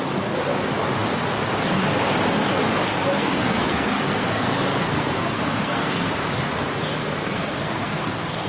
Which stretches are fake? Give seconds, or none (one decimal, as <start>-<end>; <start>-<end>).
2.9-6.1; 7.0-8.5